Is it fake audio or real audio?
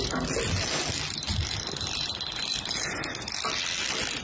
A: real